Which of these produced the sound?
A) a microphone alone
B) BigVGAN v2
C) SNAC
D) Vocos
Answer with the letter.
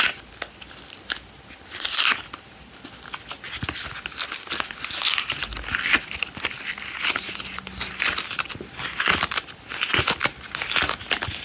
A